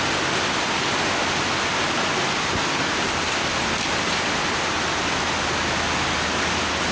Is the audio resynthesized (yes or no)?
no